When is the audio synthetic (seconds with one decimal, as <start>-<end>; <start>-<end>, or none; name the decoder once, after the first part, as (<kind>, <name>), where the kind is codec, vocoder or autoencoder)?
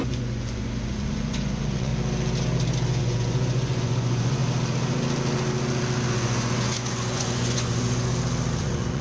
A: 0.0-1.9 (vocoder, Vocos); 3.0-4.4; 6.1-8.1; 8.6-9.0